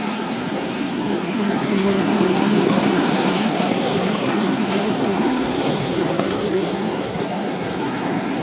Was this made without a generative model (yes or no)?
no